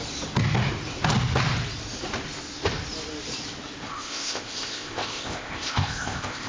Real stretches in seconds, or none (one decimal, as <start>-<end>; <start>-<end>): 0.0-3.9